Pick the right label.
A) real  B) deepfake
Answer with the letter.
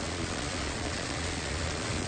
B